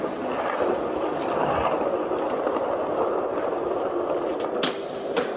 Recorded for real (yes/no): yes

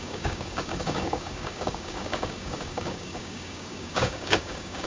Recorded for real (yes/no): no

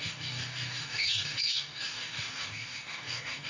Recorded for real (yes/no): no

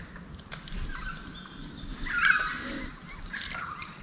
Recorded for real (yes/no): yes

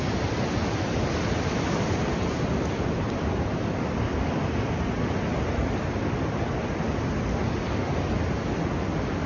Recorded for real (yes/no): yes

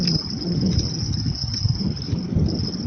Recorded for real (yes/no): yes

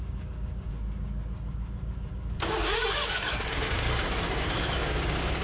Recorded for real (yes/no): no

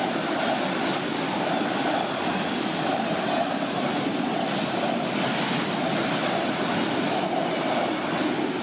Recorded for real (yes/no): yes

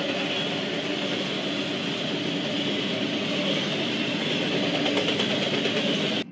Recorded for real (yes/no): yes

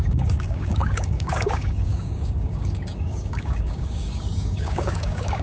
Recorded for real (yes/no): no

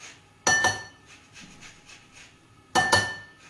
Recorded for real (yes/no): yes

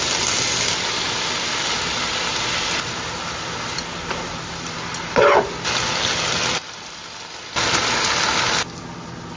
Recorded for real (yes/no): yes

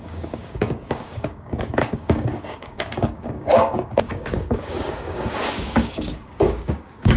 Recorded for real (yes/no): no